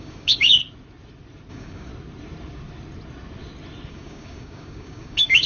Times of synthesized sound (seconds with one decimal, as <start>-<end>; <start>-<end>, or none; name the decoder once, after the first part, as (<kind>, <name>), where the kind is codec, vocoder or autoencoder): 0.0-0.6 (codec, DAC); 1.5-1.9; 3.9-5.5